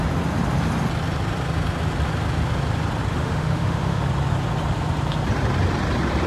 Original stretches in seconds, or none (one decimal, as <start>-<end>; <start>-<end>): 0.0-3.1; 4.0-6.3

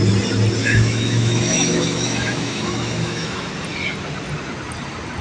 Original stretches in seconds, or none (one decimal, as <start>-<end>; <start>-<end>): 0.0-0.6; 3.5-5.2